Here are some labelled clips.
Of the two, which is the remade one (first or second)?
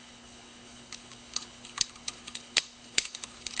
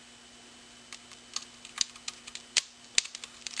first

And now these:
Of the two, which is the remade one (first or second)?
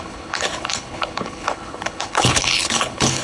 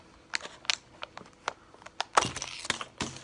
first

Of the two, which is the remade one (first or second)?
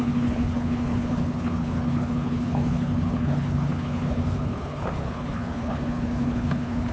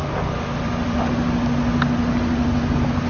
first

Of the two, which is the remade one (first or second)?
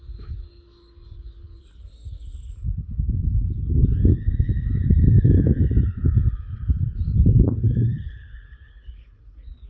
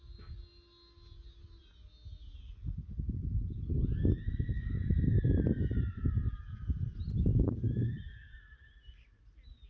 first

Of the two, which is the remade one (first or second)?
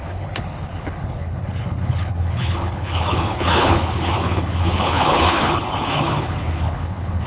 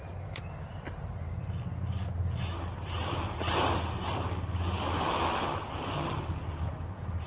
first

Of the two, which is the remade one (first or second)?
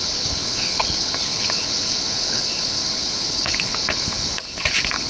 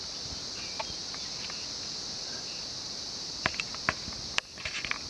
first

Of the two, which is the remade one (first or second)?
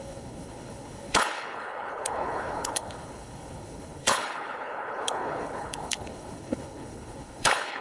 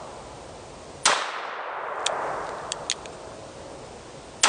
first